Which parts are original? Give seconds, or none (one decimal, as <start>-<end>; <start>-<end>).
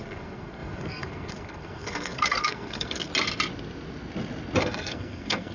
3.1-4.6